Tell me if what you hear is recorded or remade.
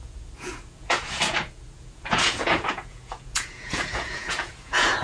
remade